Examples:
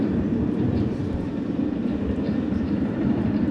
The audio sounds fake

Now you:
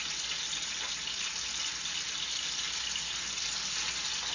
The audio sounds real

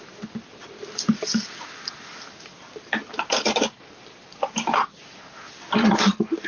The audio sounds real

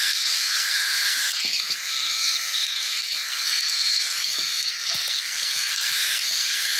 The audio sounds fake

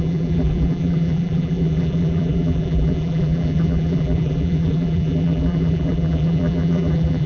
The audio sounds fake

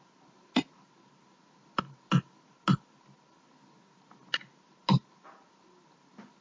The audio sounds real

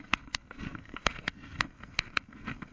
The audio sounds fake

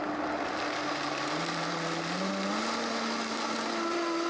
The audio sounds real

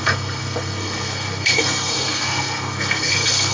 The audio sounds fake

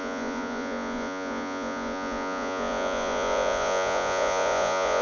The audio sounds fake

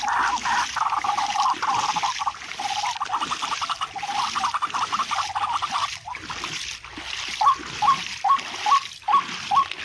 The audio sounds real